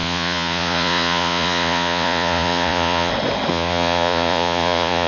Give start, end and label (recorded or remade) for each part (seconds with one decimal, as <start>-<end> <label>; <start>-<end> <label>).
0.0-3.1 remade; 3.1-3.5 recorded; 3.5-5.1 remade